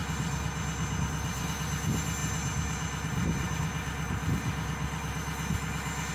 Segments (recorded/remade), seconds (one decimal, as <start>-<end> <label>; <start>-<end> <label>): 0.0-1.0 recorded; 1.0-2.2 remade; 2.2-6.1 recorded